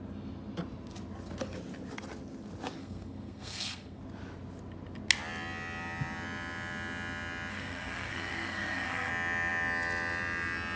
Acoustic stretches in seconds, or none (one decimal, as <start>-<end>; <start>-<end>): 0.0-2.8; 4.0-7.5; 9.1-10.8